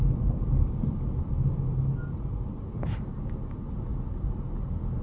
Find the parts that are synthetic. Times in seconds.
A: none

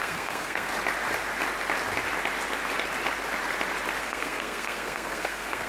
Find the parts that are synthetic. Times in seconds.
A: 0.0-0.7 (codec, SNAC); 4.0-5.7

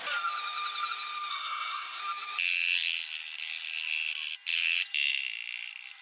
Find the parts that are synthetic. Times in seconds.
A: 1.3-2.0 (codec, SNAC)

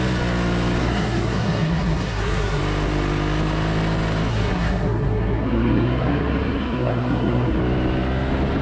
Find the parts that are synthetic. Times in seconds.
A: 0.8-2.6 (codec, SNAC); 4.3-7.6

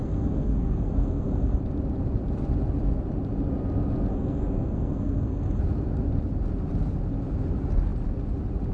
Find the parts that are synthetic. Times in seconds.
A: 0.0-1.6 (codec, SNAC); 4.1-5.6

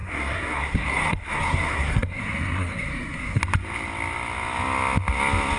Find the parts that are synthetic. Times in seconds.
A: 0.0-3.4 (codec, SNAC)

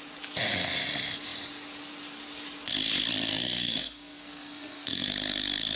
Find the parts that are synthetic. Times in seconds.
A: 3.3-5.1 (codec, SNAC)

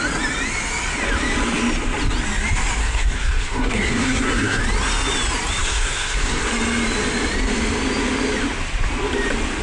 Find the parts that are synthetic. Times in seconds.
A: 2.8-4.6 (codec, SNAC); 5.6-6.5